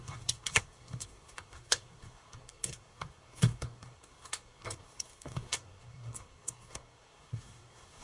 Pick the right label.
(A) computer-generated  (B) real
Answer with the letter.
A